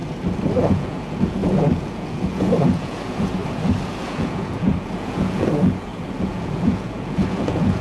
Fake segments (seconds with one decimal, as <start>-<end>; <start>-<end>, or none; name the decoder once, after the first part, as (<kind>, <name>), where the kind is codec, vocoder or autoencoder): 0.7-3.4 (vocoder, Vocos); 4.0-7.8